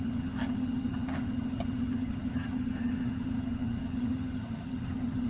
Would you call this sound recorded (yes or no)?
no